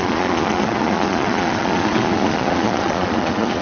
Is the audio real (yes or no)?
no